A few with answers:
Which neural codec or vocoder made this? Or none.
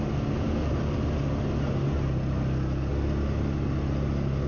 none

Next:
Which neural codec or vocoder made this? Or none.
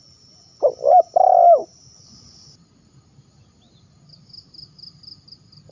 none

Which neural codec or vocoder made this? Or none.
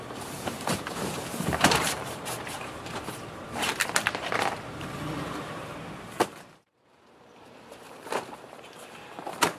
vocoder, BigVGAN v2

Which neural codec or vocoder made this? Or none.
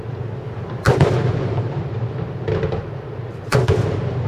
none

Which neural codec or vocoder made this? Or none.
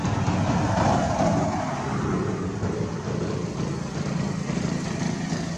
none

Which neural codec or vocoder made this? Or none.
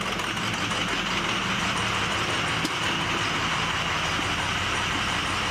vocoder, BigVGAN v2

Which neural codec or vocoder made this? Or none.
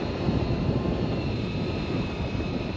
vocoder, BigVGAN v2